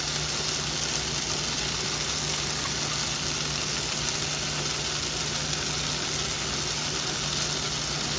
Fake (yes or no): no